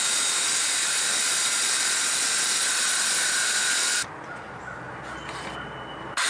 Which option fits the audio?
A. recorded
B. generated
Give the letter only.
A